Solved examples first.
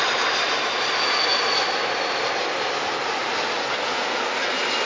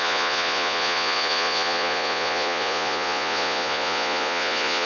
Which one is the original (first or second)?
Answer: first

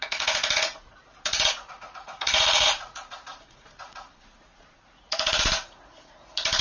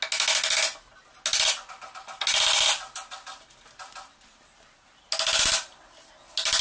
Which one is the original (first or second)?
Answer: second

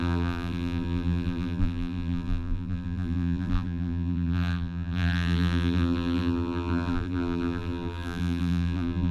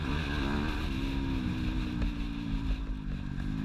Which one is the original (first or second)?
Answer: second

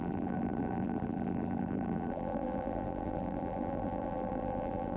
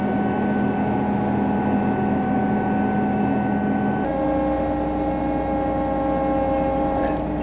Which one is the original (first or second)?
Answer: second